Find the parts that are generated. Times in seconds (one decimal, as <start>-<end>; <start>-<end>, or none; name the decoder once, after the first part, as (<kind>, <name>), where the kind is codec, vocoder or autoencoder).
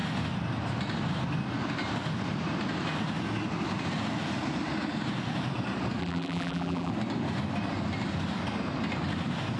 6.0-6.9 (vocoder, BigVGAN v2)